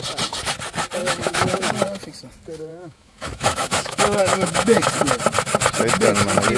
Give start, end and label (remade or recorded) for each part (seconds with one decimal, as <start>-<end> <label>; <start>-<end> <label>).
0.0-1.0 recorded; 1.0-1.7 remade; 1.7-2.7 recorded; 2.7-4.9 remade; 4.9-6.6 recorded